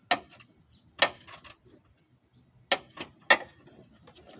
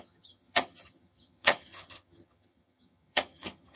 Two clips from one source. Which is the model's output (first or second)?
second